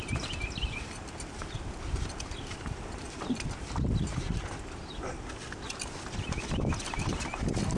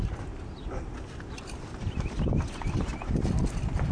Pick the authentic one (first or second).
second